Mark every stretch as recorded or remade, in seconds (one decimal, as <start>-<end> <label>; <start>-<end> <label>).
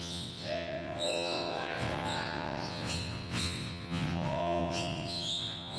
0.0-5.8 remade